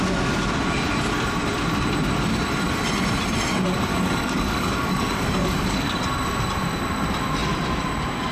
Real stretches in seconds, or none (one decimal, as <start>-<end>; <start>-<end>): 0.0-3.9; 6.0-8.3